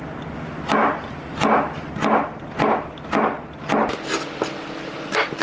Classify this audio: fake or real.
real